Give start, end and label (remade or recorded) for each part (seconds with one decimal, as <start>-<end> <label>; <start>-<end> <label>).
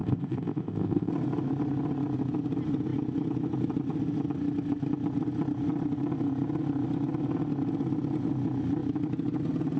0.0-1.1 remade; 1.1-9.8 recorded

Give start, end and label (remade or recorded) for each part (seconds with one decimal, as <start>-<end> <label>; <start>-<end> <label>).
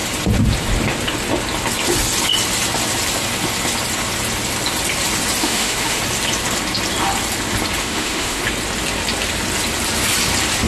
0.0-5.4 recorded; 5.4-6.0 remade; 6.0-7.8 recorded; 7.8-8.4 remade; 8.4-10.7 recorded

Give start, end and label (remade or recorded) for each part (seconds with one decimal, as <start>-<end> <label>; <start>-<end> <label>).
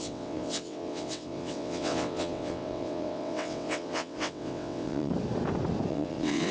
0.0-5.1 remade; 5.1-5.9 recorded; 5.9-6.5 remade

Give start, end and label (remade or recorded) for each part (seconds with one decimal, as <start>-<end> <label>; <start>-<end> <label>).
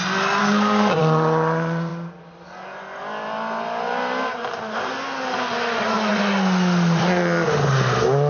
0.0-0.4 recorded; 0.4-1.0 remade; 1.0-8.3 recorded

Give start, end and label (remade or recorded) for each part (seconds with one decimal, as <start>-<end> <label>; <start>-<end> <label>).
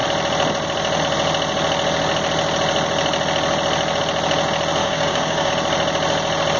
0.0-4.8 recorded; 4.8-5.5 remade; 5.5-6.6 recorded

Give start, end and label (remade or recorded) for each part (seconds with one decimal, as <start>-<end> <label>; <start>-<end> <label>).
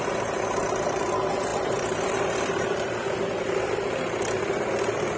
0.0-1.5 recorded; 1.5-4.6 remade; 4.6-5.2 recorded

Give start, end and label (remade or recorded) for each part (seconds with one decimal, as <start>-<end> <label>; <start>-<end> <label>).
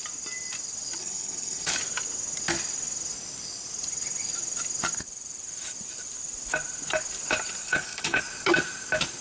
0.0-1.0 recorded; 1.0-1.7 remade; 1.7-7.6 recorded; 7.6-8.2 remade; 8.2-9.2 recorded